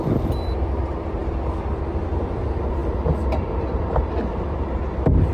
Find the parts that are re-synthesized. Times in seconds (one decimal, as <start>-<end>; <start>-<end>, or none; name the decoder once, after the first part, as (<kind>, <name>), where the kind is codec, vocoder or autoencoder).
none